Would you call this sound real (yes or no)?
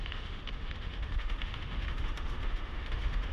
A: no